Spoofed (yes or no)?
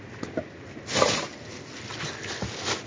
no